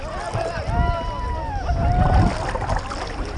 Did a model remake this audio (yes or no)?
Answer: no